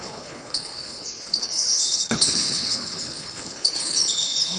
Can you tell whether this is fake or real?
fake